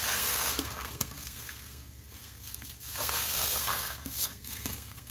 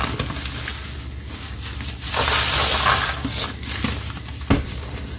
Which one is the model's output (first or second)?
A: first